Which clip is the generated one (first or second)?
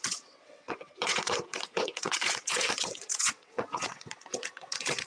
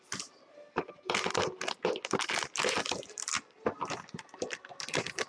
first